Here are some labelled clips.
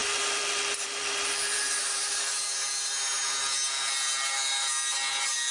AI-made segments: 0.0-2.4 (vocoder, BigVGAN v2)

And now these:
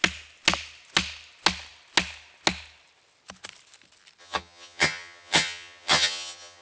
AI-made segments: 4.2-6.6 (vocoder, HiFi-GAN)